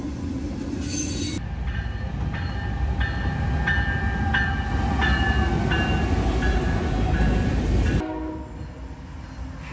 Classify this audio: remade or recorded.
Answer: recorded